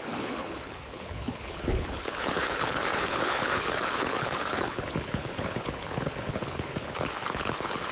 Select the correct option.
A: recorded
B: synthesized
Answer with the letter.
B